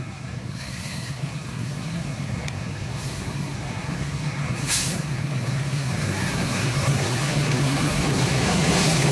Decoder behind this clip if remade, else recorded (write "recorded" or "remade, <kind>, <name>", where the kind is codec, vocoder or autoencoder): remade, codec, SNAC